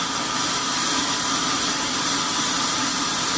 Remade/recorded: recorded